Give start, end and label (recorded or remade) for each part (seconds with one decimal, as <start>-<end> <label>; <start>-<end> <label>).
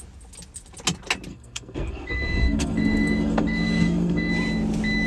0.0-1.3 recorded; 1.3-4.3 remade; 4.3-5.1 recorded